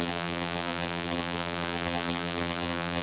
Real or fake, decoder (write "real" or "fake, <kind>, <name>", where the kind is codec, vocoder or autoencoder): fake, vocoder, BigVGAN v2